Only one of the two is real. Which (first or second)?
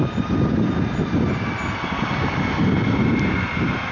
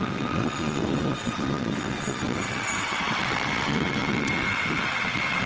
first